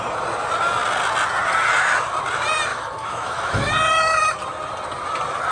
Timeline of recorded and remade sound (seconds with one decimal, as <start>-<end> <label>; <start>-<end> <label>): 0.0-2.7 recorded; 2.7-3.7 remade; 3.7-5.5 recorded